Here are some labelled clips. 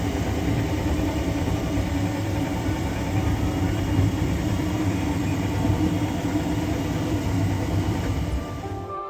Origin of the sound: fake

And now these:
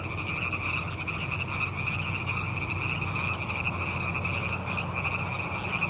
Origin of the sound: real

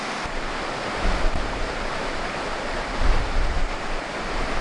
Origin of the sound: real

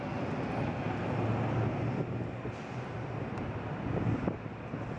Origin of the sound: real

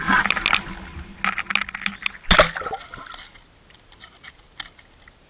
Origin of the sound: real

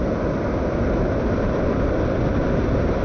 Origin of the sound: real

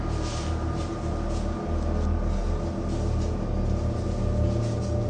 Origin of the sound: real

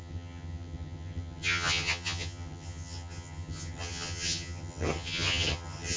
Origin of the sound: fake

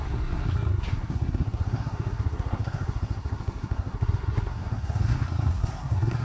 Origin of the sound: fake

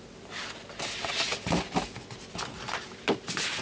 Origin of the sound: real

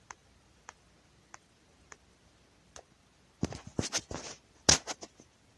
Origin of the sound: real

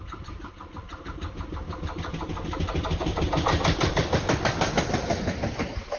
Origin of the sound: real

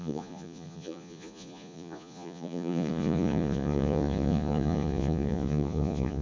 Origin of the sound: fake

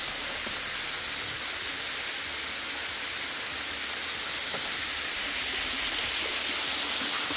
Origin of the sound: real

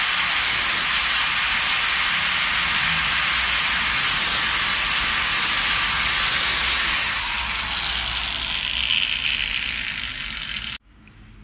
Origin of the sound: real